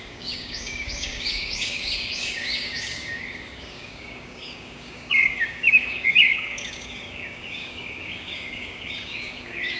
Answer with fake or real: fake